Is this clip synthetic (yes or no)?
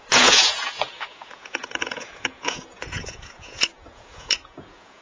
yes